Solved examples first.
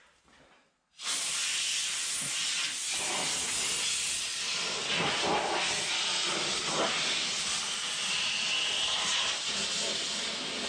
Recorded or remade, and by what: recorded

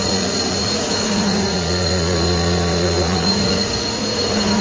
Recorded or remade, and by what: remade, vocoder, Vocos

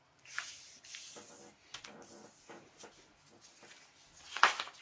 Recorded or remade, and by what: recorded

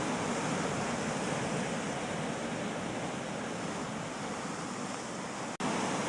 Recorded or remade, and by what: recorded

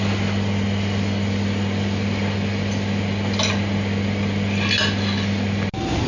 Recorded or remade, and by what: recorded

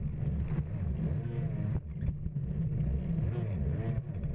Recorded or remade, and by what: recorded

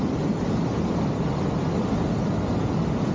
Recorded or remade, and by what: recorded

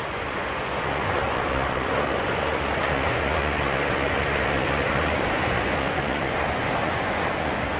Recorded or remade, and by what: remade, vocoder, Vocos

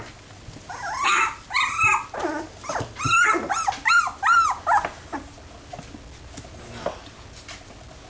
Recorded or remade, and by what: recorded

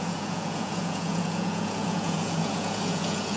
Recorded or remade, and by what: remade, vocoder, Vocos